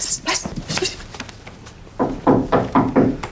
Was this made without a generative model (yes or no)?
yes